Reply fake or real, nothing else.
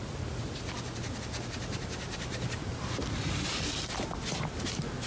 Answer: real